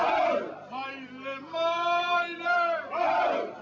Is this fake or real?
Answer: real